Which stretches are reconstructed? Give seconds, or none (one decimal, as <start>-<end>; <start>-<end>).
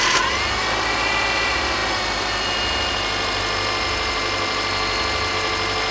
none